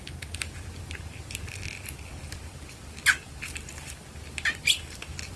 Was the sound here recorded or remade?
recorded